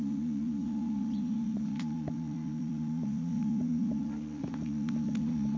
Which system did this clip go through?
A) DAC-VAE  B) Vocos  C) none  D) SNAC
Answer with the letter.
B